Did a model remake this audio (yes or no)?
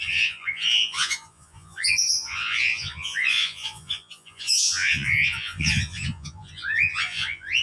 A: yes